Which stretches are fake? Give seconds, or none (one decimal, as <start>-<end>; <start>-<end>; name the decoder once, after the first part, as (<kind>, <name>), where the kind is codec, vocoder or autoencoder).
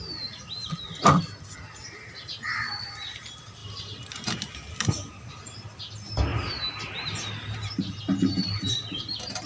3.6-4.4 (vocoder, BigVGAN v2); 6.3-9.0